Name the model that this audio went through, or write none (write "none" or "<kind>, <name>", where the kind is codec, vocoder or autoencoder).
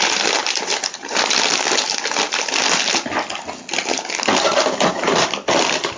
none